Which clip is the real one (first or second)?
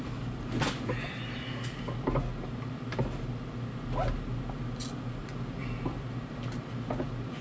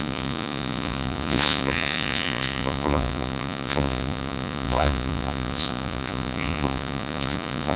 first